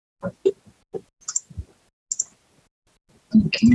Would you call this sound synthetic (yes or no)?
no